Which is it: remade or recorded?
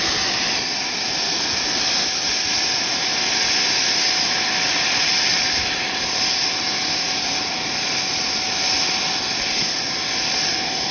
recorded